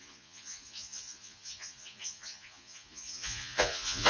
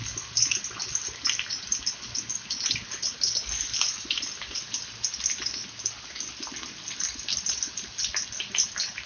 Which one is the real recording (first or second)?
second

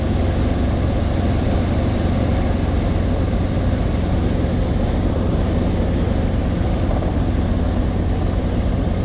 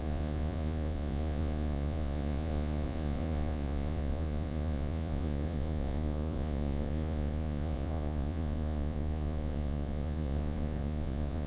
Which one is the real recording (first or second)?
first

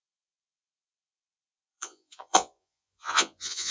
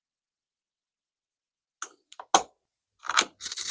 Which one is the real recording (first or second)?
second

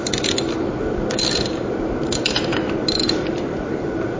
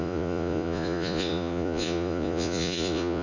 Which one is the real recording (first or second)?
first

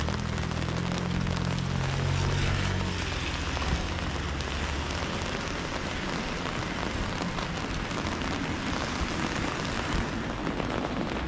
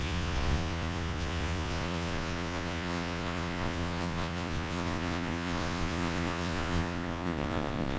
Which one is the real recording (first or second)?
first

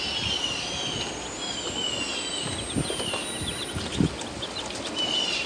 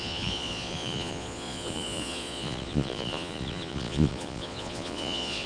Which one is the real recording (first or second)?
first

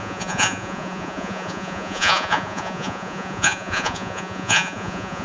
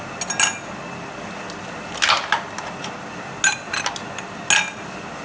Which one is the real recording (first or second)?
second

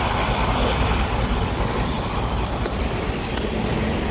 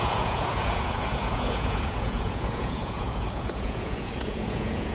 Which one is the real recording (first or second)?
first